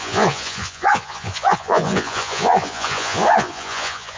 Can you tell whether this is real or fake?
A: fake